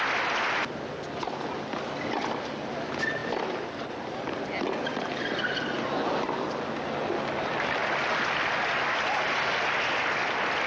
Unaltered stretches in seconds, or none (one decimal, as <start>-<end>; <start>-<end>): 0.0-10.7